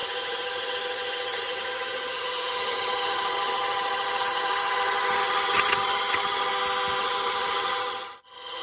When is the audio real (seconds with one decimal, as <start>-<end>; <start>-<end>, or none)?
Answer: 6.5-7.0